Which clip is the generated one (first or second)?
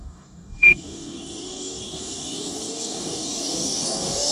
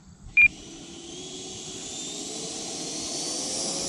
first